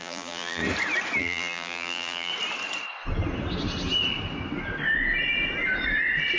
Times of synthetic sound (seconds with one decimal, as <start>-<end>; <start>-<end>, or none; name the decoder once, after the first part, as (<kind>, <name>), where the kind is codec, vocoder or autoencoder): 0.0-0.6 (vocoder, BigVGAN v2); 1.2-2.3